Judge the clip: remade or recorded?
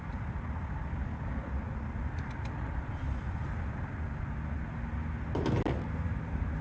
recorded